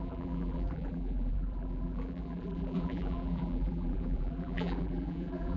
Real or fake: fake